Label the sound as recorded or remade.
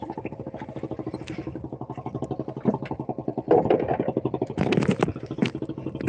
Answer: recorded